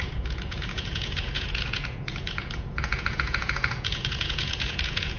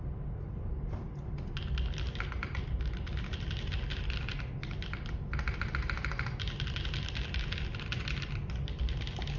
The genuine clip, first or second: second